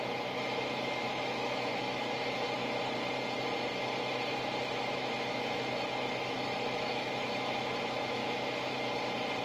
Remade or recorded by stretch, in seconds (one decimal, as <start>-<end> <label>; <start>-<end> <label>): 0.0-2.6 remade; 2.6-4.9 recorded; 4.9-8.2 remade; 8.2-9.4 recorded